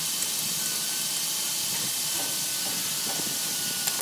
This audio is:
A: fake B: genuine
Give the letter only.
B